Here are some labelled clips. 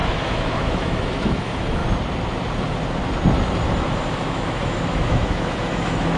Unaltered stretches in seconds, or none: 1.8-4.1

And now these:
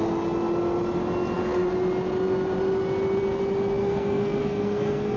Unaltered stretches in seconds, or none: 0.0-3.8

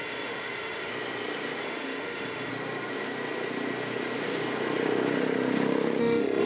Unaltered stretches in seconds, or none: 0.9-1.6; 2.5-6.0

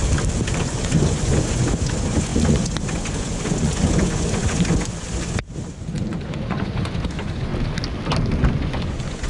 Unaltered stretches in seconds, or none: 0.0-0.6; 7.5-8.5

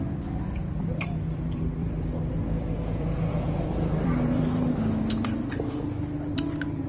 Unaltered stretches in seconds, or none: 0.0-0.6; 1.1-1.8; 5.5-6.9

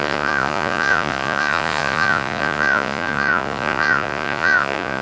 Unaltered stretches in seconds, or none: none

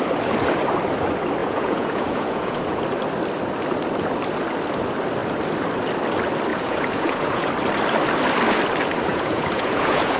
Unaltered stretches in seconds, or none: 0.0-1.4; 2.8-6.5; 7.5-9.1

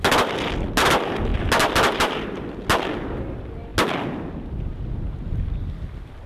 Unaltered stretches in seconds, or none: 0.0-6.3